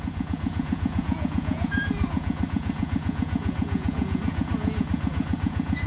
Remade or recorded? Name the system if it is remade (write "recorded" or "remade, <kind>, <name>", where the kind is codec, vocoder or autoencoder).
remade, vocoder, Vocos